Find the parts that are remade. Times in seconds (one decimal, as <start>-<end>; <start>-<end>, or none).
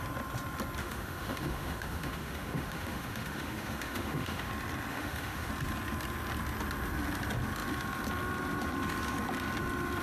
0.8-4.5; 4.9-5.5